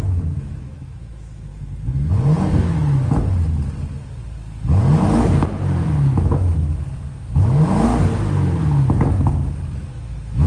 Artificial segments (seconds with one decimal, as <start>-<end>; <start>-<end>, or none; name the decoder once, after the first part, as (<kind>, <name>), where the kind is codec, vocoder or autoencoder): 0.0-1.5 (autoencoder, DAC-VAE); 6.2-6.7; 7.4-7.9; 9.9-10.5